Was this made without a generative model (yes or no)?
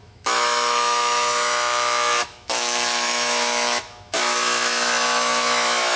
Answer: no